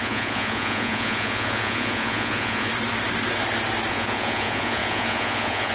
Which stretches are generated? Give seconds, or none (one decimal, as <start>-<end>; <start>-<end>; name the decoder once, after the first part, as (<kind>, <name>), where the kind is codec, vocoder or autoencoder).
0.0-2.7 (vocoder, Vocos); 3.9-5.7